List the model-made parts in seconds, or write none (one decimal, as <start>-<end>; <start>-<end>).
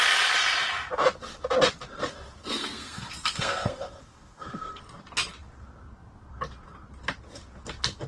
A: 2.4-4.8